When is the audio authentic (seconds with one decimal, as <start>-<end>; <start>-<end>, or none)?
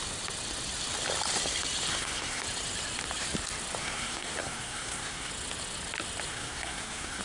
0.0-1.9; 2.4-3.8; 5.3-6.3